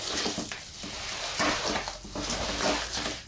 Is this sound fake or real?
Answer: real